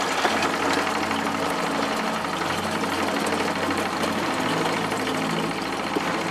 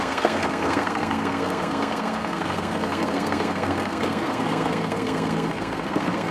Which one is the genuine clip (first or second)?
first